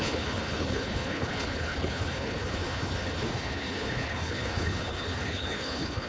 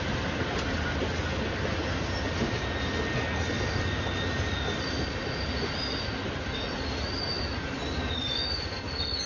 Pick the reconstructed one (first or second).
first